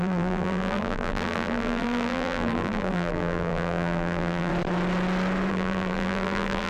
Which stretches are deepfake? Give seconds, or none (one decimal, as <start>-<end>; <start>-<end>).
0.0-4.5; 5.5-6.7